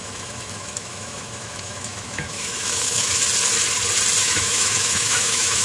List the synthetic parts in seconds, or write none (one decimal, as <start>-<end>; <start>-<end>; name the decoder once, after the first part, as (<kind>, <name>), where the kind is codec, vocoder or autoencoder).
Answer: 0.0-3.2 (autoencoder, DAC-VAE); 4.2-5.6

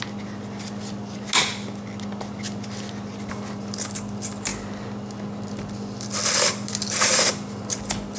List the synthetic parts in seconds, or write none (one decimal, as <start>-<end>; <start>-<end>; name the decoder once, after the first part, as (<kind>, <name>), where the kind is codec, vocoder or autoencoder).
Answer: none

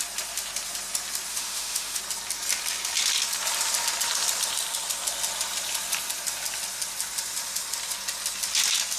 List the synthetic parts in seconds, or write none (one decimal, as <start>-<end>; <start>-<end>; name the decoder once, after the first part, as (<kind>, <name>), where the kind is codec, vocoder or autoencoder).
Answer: 1.3-2.0 (autoencoder, DAC-VAE)

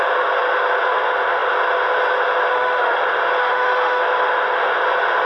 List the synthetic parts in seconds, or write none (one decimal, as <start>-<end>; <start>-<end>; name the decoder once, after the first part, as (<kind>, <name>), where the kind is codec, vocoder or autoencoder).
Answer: 2.5-3.0 (autoencoder, DAC-VAE); 3.4-4.0

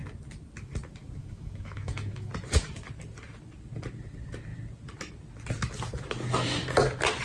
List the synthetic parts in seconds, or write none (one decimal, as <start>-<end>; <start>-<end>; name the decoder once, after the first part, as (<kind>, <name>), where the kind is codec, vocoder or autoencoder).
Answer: 1.2-2.3 (autoencoder, DAC-VAE)

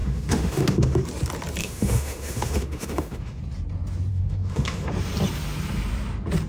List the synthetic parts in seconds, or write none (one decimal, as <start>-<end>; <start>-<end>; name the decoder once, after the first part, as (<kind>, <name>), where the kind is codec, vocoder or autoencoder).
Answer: 0.0-1.0 (autoencoder, DAC-VAE); 1.6-3.4; 4.1-4.9